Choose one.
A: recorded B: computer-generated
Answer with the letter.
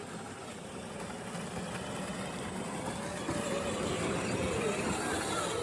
A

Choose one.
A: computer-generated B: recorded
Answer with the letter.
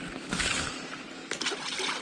B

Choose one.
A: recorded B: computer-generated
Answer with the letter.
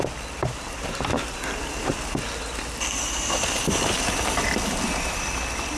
A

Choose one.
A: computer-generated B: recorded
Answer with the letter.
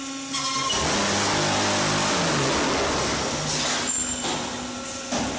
B